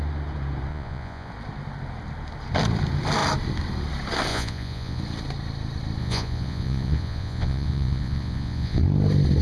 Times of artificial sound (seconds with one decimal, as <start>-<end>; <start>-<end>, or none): 0.7-1.3; 4.3-5.0; 6.0-8.8